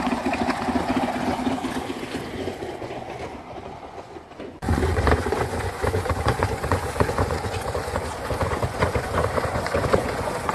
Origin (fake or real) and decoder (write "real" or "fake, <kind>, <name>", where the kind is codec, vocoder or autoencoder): fake, vocoder, Vocos